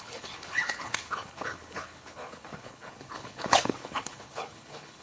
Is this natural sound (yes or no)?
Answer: no